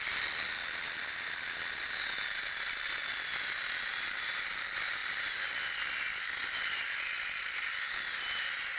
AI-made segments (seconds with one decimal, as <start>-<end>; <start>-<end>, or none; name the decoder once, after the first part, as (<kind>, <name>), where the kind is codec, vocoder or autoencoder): none